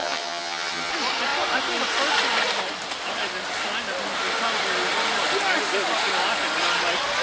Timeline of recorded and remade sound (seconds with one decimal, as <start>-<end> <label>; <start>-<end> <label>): 0.0-0.9 remade; 0.9-7.2 recorded